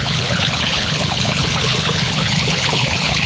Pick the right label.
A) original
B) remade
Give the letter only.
B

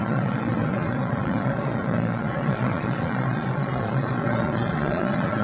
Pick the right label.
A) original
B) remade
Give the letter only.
B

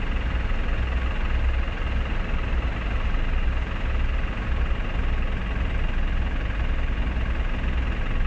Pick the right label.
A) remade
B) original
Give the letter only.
B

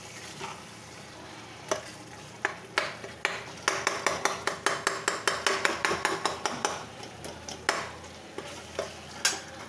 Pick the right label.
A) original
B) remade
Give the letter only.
A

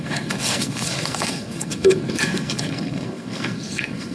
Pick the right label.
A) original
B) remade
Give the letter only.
B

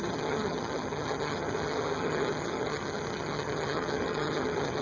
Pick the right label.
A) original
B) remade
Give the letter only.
B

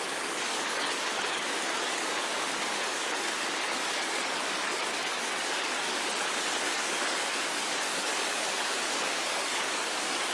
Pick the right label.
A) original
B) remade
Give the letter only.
B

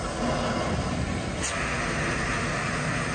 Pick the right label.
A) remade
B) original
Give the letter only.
B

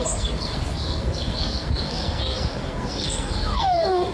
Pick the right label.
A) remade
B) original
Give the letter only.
A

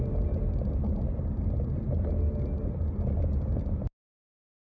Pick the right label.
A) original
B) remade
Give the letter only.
A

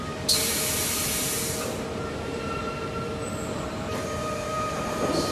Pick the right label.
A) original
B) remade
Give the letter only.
B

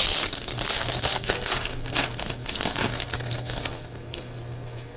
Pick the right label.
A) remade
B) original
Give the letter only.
A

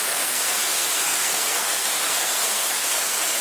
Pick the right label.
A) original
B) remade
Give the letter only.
B